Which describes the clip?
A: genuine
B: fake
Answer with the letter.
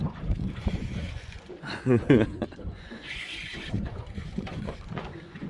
B